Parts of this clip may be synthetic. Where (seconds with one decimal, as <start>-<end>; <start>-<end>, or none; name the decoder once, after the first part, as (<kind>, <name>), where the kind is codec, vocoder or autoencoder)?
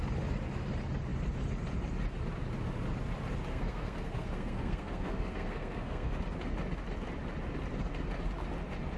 3.5-6.2 (codec, SNAC)